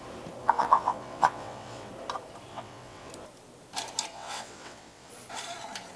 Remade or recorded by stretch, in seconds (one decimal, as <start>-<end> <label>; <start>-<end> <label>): 0.0-0.4 recorded; 0.4-1.9 remade; 1.9-2.5 recorded; 2.5-3.1 remade; 3.1-4.1 recorded; 4.1-5.1 remade; 5.1-6.0 recorded